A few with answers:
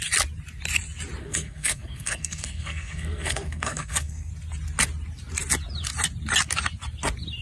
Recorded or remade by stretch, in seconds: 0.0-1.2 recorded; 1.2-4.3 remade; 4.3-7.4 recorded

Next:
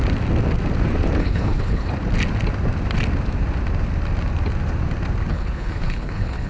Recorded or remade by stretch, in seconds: 0.0-1.2 recorded; 1.2-1.9 remade; 1.9-5.3 recorded; 5.3-6.5 remade

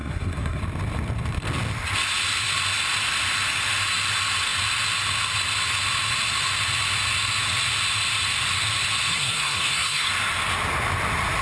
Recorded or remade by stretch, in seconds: 0.0-0.6 remade; 0.6-9.1 recorded; 9.1-10.1 remade; 10.1-11.4 recorded

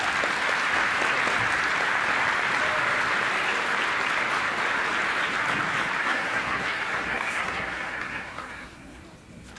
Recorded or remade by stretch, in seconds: 0.0-6.0 recorded; 6.0-9.0 remade; 9.0-9.6 recorded

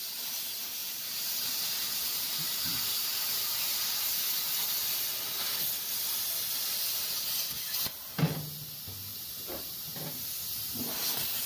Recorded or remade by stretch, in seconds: 0.0-0.8 recorded; 0.8-3.8 remade; 3.8-9.1 recorded; 9.1-9.8 remade; 9.8-11.5 recorded

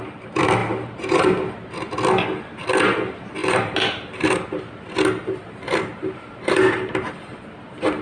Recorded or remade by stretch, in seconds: 0.0-0.6 recorded; 0.6-1.3 remade; 1.3-3.4 recorded; 3.4-4.1 remade; 4.1-5.9 recorded; 5.9-6.9 remade; 6.9-8.0 recorded

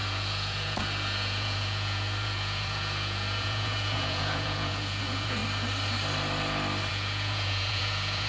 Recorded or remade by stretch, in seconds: 0.0-5.4 remade; 5.4-6.9 recorded; 6.9-8.3 remade

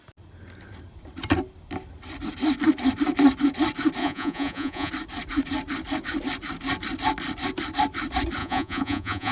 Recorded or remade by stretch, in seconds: 0.0-4.0 recorded; 4.0-4.9 remade; 4.9-8.4 recorded; 8.4-9.3 remade